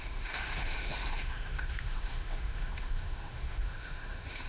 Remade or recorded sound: remade